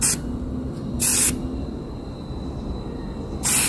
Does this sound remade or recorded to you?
recorded